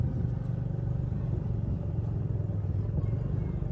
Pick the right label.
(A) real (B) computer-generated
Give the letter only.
A